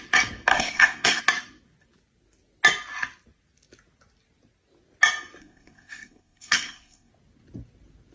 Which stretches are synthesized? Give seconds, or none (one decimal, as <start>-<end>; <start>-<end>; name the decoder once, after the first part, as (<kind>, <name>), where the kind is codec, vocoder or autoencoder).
0.5-1.2 (codec, SNAC); 5.4-7.1